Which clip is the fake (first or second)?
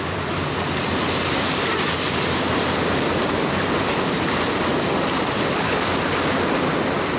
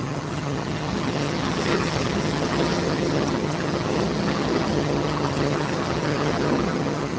second